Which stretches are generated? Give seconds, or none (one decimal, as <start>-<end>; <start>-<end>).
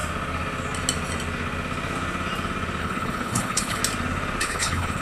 2.8-3.8; 4.4-5.0